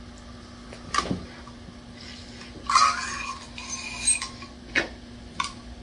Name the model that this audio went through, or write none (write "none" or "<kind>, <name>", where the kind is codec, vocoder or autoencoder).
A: none